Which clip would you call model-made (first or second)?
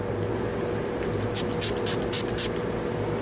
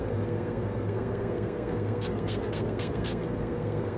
second